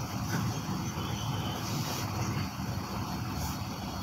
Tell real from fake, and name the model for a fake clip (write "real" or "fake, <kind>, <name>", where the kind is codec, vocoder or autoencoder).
real